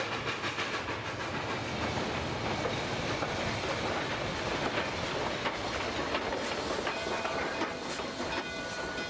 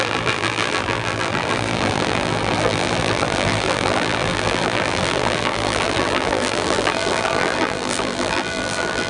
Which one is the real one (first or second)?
first